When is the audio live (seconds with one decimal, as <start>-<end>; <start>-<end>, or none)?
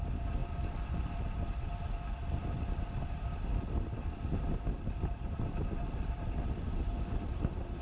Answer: 0.0-7.8